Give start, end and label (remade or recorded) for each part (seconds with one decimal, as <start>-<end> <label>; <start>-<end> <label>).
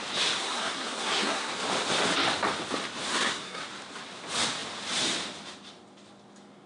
0.0-0.4 recorded; 0.4-1.5 remade; 1.5-3.1 recorded; 3.1-3.6 remade; 3.6-6.7 recorded